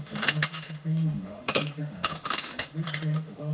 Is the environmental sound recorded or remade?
remade